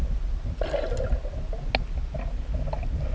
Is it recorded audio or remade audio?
recorded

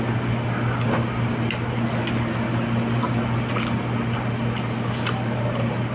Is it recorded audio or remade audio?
recorded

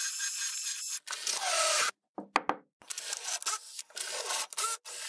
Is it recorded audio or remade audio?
recorded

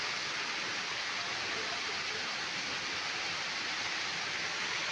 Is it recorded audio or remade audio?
recorded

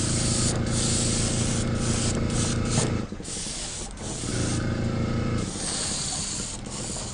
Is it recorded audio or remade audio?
recorded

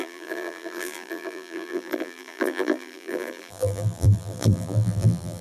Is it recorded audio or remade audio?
remade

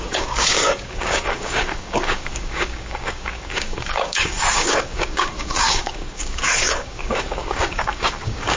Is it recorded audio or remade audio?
remade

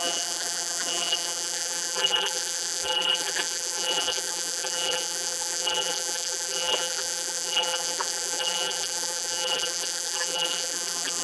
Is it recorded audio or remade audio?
remade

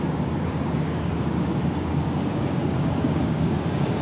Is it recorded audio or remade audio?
remade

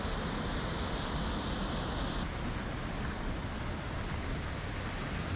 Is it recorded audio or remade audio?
recorded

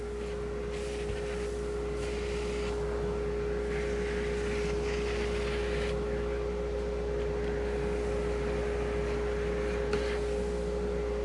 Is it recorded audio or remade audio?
recorded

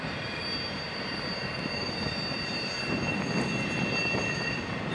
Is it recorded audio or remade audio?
recorded